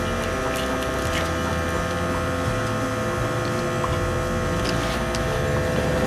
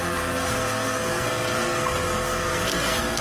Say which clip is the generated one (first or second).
second